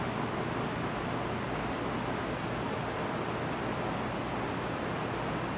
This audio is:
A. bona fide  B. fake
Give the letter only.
A